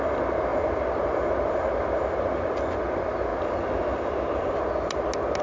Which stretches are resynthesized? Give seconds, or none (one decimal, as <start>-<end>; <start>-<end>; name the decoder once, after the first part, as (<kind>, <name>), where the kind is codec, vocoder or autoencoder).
none